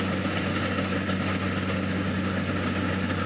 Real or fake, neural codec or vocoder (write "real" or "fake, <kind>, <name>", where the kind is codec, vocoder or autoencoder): real